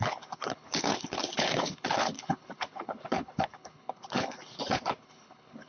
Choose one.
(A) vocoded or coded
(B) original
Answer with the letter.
A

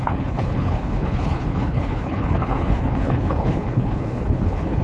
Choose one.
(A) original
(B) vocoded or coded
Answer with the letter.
B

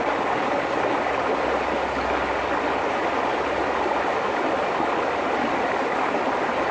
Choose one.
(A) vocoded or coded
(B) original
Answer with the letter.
B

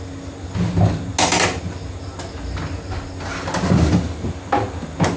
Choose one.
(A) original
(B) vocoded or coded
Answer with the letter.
A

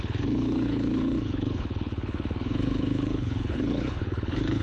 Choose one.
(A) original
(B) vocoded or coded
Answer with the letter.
B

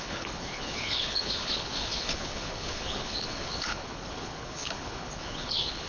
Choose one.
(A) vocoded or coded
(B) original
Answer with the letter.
A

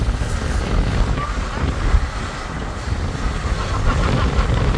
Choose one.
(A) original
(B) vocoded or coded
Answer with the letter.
A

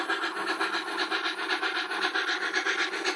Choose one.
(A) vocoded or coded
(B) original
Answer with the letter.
B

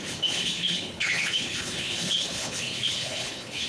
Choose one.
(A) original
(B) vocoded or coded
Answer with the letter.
B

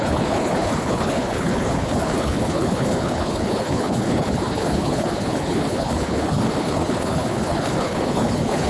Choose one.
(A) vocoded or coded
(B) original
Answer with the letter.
A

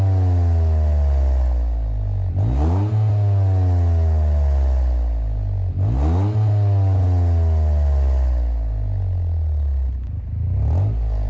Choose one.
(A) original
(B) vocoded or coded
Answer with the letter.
A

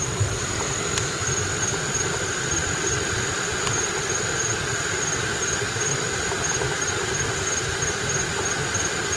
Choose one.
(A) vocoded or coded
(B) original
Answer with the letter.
B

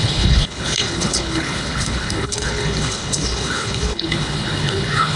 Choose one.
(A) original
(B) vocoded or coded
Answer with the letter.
B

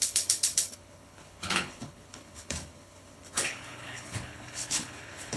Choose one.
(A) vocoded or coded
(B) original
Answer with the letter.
A